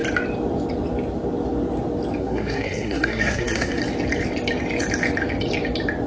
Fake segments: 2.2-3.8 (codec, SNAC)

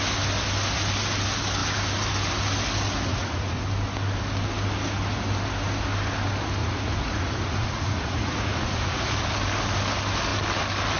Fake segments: 3.1-3.6 (vocoder, Vocos); 6.6-9.2

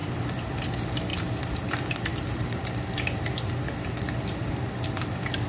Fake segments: 1.1-1.7 (vocoder, BigVGAN v2)